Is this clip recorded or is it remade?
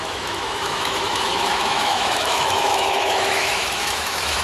remade